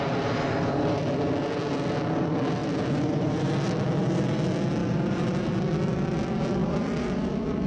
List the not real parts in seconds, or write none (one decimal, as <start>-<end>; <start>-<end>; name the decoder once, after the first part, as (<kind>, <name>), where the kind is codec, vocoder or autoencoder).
2.6-4.2 (vocoder, BigVGAN v2); 4.8-5.6; 6.6-7.2